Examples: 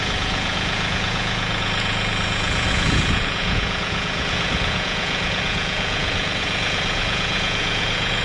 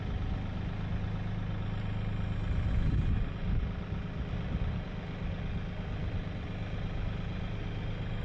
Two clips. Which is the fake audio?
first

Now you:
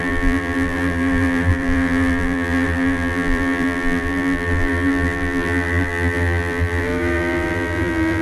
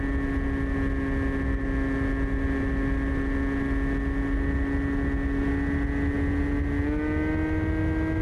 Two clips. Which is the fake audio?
first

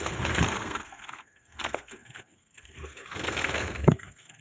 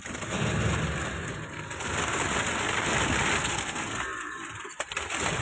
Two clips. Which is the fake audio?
first